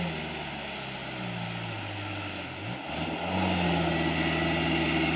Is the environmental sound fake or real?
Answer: real